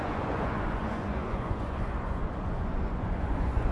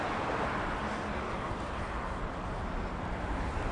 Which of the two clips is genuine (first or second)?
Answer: second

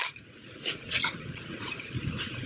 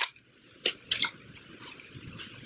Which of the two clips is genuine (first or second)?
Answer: second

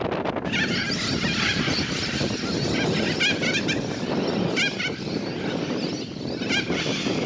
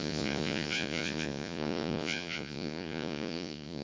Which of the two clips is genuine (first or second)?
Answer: first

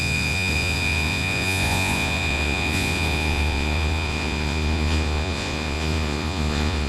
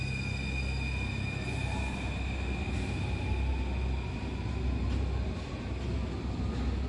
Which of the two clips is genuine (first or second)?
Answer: second